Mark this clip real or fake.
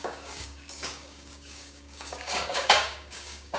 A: fake